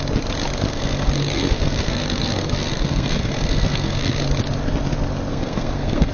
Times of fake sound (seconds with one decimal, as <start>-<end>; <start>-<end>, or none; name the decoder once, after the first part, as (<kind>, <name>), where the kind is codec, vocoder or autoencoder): 0.7-4.2 (codec, SNAC); 5.3-6.1